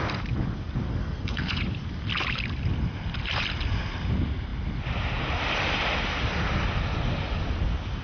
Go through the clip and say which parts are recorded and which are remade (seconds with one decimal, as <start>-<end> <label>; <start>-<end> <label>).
0.0-0.9 recorded; 0.9-1.6 remade; 1.6-8.0 recorded